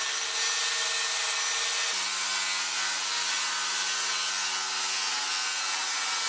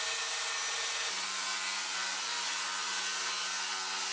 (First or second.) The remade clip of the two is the second